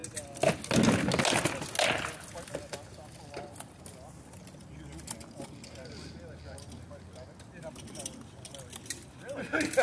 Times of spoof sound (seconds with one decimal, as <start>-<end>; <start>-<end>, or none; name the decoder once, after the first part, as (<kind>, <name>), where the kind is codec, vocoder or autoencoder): none